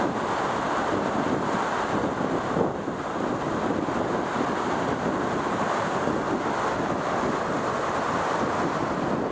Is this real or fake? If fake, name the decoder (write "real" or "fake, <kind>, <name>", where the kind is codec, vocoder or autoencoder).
real